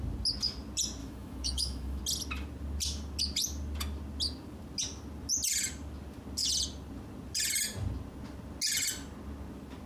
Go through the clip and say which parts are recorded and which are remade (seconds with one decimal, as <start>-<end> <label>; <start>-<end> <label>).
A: 0.0-1.0 recorded; 1.0-2.0 remade; 2.0-9.9 recorded